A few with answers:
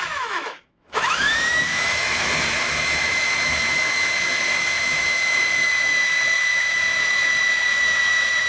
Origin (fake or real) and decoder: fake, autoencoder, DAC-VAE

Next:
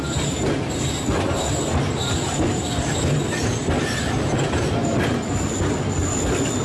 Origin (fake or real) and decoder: real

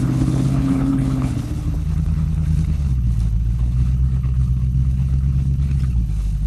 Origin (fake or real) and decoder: fake, codec, HILCodec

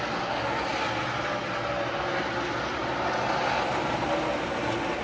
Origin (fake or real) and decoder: real